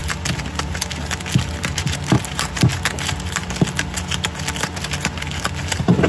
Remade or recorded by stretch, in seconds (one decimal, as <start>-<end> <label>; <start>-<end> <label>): 0.0-1.6 recorded; 1.6-2.7 remade; 2.7-5.6 recorded; 5.6-6.1 remade